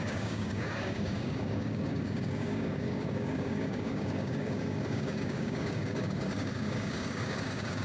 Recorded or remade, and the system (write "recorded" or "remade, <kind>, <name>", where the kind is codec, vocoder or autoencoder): remade, codec, DAC